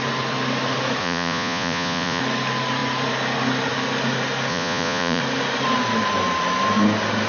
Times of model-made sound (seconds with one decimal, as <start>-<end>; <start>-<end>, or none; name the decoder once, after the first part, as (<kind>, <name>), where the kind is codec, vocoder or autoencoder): 1.0-2.2 (vocoder, Vocos); 4.5-5.2